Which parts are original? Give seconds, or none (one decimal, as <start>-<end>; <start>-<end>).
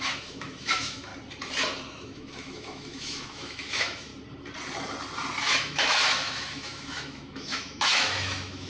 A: 1.1-1.9; 4.1-5.4